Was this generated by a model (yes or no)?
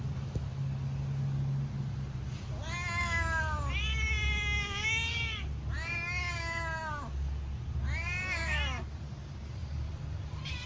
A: no